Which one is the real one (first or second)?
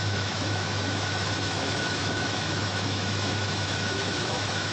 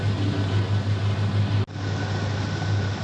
second